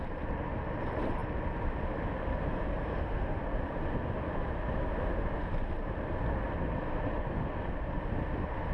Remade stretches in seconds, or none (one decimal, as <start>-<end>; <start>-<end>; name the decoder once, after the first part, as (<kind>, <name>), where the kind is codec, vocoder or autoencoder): 2.9-3.4 (autoencoder, DAC-VAE)